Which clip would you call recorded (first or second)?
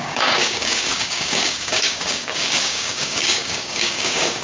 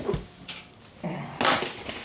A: second